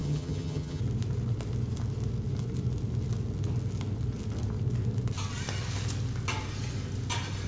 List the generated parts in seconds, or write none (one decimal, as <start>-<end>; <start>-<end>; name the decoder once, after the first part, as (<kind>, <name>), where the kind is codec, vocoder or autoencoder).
0.0-0.8 (vocoder, HiFi-GAN)